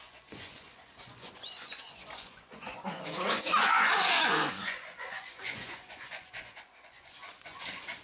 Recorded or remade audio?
remade